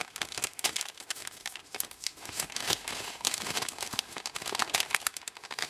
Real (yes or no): no